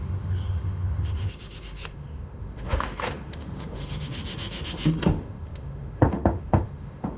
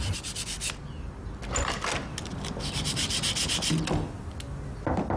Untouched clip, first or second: second